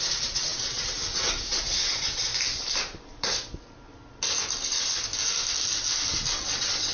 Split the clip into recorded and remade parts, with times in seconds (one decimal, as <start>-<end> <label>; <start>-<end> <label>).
0.0-2.3 remade; 2.3-6.4 recorded; 6.4-6.9 remade